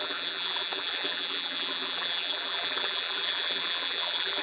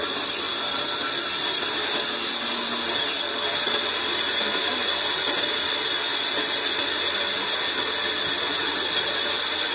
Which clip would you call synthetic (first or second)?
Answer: first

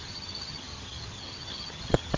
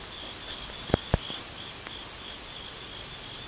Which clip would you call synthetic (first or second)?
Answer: first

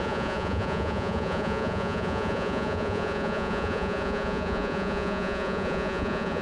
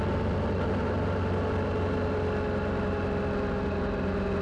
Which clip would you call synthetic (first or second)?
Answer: first